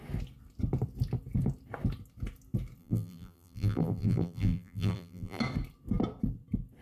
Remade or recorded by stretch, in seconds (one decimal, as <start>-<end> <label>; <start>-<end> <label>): 0.0-2.8 recorded; 2.8-5.4 remade; 5.4-6.8 recorded